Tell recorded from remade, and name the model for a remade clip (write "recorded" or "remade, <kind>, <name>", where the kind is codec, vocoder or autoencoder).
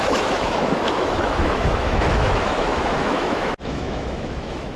remade, autoencoder, DAC-VAE